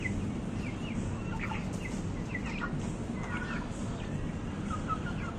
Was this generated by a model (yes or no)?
no